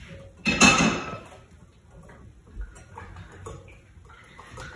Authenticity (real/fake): real